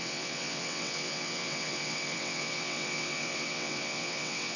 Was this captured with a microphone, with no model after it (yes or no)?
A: no